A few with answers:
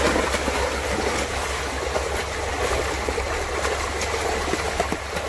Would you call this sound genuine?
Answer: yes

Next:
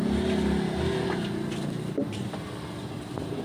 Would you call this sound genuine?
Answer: yes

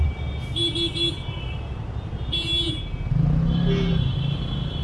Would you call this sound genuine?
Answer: yes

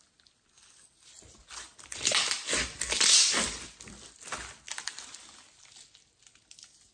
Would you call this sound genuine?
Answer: yes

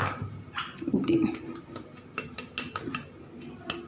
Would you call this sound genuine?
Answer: yes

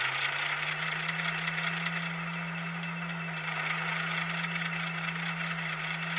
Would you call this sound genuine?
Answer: yes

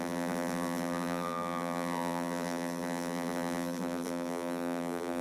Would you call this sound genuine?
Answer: no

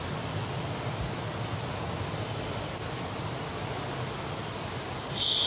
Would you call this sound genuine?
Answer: yes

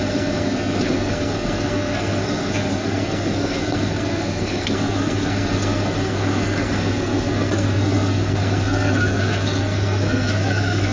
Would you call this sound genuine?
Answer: no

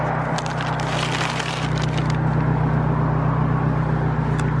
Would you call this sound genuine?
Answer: yes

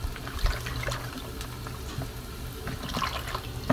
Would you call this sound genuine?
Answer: no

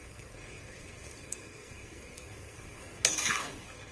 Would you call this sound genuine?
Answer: no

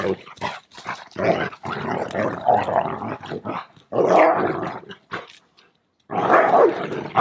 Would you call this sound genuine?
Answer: yes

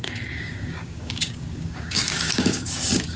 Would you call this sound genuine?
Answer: no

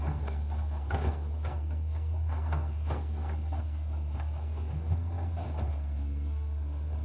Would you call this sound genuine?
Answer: no